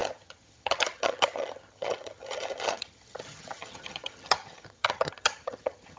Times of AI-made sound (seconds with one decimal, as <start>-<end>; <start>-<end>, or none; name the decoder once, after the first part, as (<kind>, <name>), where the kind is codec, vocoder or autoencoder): 0.0-6.0 (vocoder, HiFi-GAN)